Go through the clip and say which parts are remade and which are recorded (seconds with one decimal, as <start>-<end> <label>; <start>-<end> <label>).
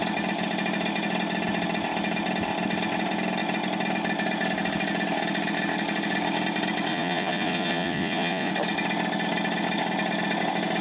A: 0.0-6.9 recorded; 6.9-8.5 remade; 8.5-10.8 recorded